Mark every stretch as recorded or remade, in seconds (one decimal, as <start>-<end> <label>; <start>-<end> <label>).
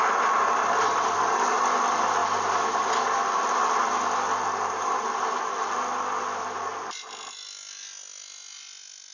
0.0-9.1 recorded